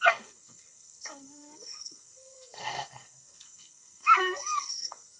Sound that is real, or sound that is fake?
fake